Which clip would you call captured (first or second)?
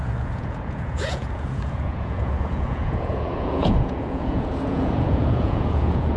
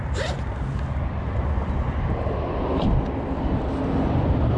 second